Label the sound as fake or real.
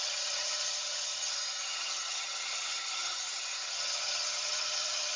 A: fake